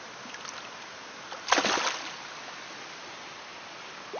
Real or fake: real